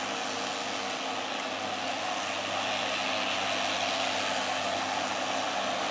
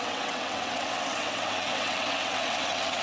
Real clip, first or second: first